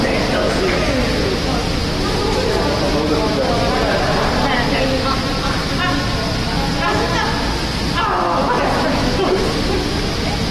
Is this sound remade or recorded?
recorded